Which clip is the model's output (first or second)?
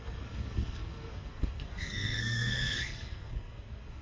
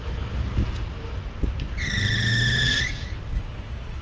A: first